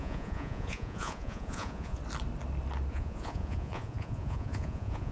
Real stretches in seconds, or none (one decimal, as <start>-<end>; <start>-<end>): 2.0-2.9